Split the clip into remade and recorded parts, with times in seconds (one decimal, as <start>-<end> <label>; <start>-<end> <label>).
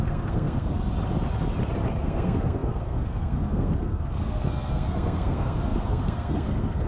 0.0-0.7 remade; 0.7-2.0 recorded; 2.0-6.9 remade